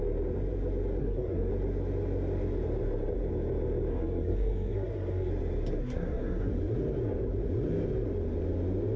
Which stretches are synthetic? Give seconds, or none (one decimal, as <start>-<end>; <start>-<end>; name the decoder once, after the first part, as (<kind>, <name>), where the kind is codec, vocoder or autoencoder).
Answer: 1.0-1.5 (codec, SNAC); 3.9-5.3; 5.8-6.5